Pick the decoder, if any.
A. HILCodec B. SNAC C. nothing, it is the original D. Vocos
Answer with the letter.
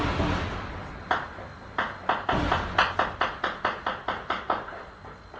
C